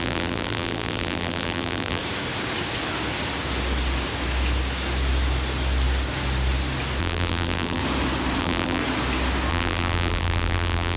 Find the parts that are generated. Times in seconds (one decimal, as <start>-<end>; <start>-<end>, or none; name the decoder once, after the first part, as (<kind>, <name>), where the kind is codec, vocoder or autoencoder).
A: 0.0-2.0 (vocoder, BigVGAN v2); 7.0-7.8; 8.4-8.8; 9.5-11.0